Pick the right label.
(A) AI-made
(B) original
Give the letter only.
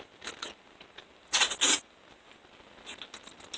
B